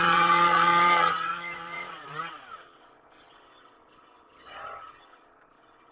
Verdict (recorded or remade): remade